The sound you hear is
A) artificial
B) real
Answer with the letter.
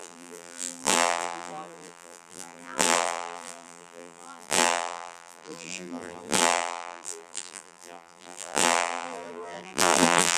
A